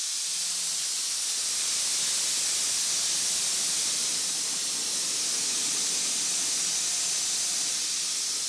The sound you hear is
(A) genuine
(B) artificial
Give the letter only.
A